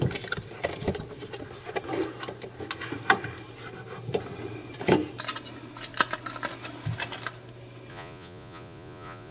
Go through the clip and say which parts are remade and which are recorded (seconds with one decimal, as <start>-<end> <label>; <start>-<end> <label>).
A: 0.0-7.9 recorded; 7.9-9.3 remade